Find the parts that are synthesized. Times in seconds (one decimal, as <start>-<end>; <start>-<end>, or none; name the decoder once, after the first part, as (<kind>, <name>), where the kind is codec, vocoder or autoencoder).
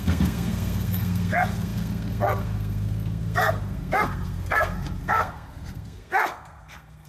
0.0-7.1 (codec, SNAC)